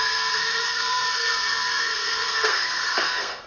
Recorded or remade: remade